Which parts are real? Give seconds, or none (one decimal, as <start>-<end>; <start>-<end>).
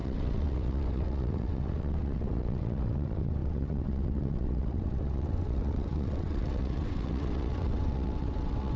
none